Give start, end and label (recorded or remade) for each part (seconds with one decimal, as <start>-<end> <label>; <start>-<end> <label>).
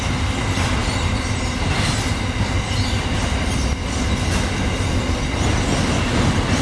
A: 0.0-6.6 recorded